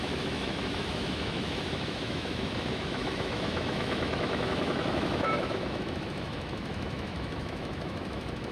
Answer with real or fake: fake